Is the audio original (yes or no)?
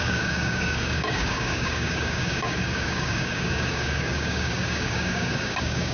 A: no